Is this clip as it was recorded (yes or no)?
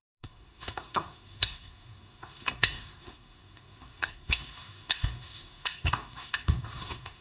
no